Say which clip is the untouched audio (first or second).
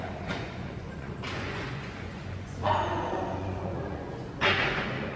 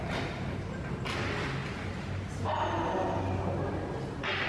second